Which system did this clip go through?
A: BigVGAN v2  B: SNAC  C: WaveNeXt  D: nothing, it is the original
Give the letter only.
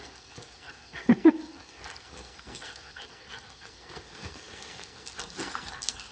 B